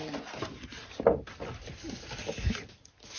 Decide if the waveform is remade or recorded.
recorded